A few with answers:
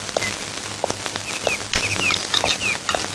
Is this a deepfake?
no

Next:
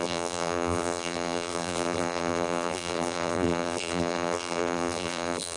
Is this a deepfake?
yes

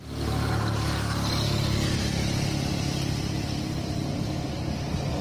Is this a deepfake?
no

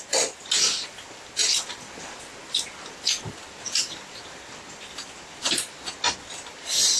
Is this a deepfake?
no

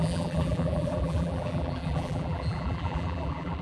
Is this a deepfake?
yes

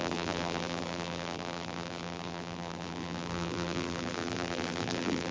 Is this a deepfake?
yes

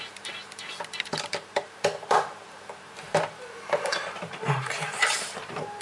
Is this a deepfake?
yes